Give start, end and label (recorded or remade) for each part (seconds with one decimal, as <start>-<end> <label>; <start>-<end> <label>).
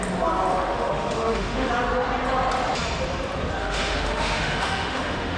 0.0-0.5 recorded; 0.5-1.7 remade; 1.7-3.6 recorded; 3.6-5.4 remade